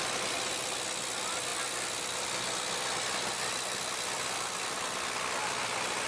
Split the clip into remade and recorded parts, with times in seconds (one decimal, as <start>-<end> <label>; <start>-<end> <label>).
0.0-6.1 recorded